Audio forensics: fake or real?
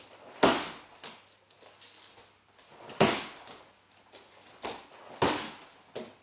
real